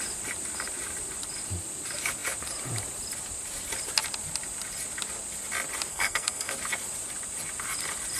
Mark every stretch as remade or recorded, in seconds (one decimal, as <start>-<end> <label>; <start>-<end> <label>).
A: 0.0-5.9 recorded; 5.9-6.5 remade; 6.5-8.2 recorded